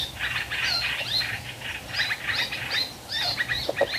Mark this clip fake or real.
real